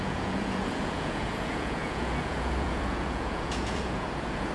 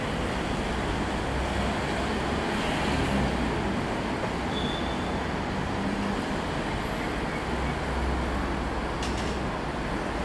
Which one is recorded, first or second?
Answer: second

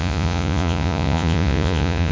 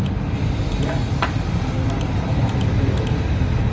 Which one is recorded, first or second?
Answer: second